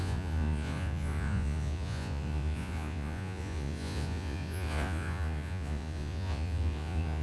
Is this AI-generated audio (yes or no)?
yes